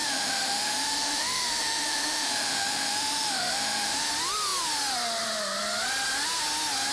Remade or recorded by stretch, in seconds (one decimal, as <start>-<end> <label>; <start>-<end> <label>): 0.0-4.1 remade; 4.1-6.9 recorded